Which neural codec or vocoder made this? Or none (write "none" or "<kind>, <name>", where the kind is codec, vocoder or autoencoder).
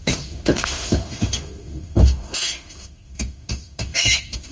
autoencoder, DAC-VAE